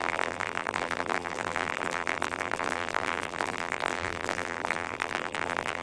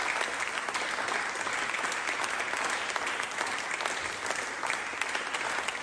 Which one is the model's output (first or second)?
first